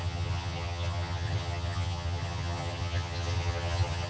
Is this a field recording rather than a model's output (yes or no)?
no